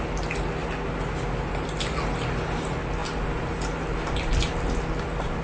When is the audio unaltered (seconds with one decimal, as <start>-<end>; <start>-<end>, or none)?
0.0-5.4